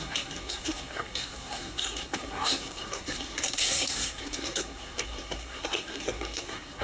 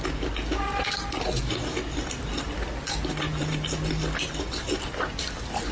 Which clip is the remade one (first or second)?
first